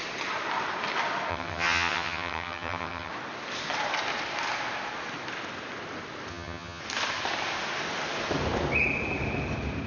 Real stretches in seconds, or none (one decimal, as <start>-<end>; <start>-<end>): 0.0-1.3; 3.1-6.3; 6.8-9.9